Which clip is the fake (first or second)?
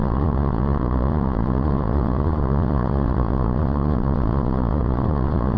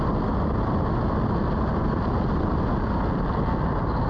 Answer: first